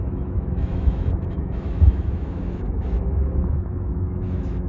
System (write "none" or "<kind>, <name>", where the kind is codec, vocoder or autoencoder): autoencoder, DAC-VAE